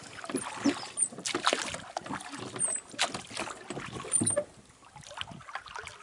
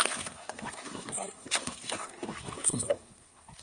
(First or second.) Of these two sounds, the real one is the first